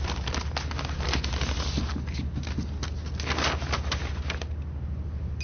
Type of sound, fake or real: real